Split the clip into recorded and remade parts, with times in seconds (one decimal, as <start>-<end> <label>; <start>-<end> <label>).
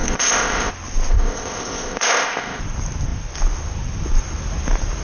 0.0-0.7 remade; 0.7-1.1 recorded; 1.1-2.6 remade; 2.6-5.0 recorded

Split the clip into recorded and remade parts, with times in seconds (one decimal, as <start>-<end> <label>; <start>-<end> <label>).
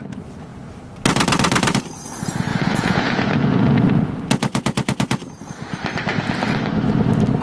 0.0-2.5 recorded; 2.5-4.1 remade; 4.1-7.4 recorded